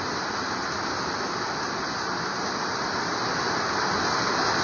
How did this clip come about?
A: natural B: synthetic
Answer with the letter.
A